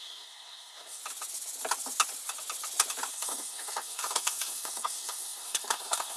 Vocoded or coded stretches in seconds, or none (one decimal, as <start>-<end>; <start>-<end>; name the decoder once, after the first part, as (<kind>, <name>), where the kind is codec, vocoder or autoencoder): 0.0-1.0 (codec, SNAC); 3.1-6.2